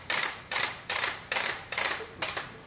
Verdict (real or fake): fake